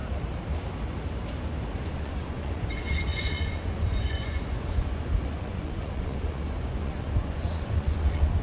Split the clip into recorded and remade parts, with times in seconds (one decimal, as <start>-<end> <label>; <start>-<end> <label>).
0.0-1.9 recorded; 1.9-8.4 remade